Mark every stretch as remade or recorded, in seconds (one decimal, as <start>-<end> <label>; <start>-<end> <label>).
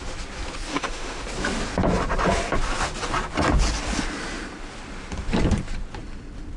0.0-0.7 recorded; 0.7-1.2 remade; 1.2-6.6 recorded